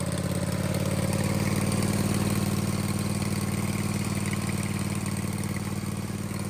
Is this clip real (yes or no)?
yes